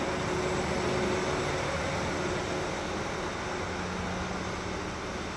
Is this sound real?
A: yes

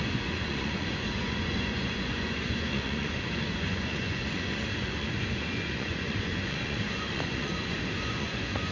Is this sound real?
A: no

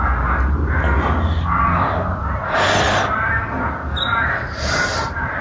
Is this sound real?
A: yes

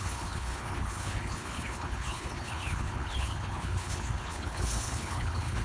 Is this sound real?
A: no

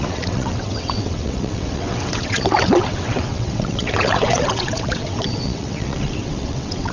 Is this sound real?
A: no